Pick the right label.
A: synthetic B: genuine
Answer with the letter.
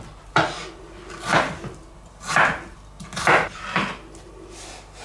B